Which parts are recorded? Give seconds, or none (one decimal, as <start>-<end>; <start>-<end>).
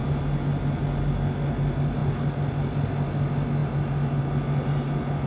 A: 0.0-5.3